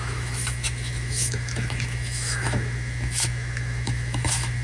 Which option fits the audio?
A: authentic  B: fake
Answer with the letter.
B